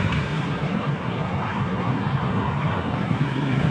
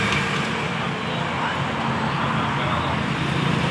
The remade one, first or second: first